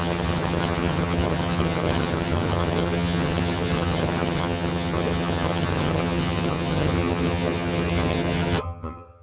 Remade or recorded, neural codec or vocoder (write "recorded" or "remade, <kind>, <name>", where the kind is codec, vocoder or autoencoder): remade, vocoder, HiFi-GAN